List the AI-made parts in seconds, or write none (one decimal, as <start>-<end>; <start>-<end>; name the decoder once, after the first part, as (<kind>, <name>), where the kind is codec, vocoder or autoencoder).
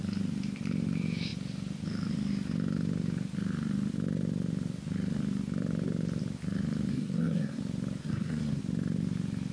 6.9-7.6 (codec, SNAC); 8.0-8.6